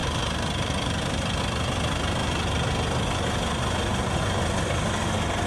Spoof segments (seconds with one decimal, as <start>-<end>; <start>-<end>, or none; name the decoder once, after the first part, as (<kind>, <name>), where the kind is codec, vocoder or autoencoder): 0.0-1.4 (vocoder, BigVGAN v2); 2.2-2.7